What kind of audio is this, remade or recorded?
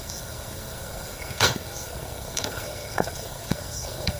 remade